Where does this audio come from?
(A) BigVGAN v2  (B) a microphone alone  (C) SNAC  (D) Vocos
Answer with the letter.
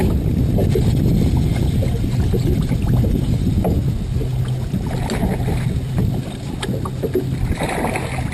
B